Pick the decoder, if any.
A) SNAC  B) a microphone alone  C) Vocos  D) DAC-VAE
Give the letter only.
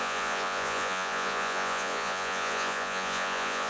C